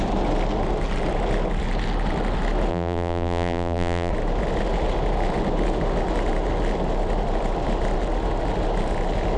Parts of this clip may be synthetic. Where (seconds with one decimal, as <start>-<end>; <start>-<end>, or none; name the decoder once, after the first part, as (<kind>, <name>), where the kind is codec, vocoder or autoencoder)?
2.7-4.1 (vocoder, BigVGAN v2)